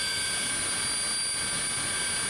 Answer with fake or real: real